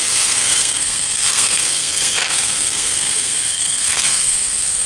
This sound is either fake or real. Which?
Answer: fake